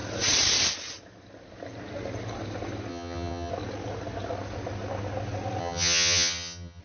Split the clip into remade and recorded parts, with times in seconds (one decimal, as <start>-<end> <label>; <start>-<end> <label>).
0.0-2.9 recorded; 2.9-3.5 remade; 3.5-5.6 recorded; 5.6-6.8 remade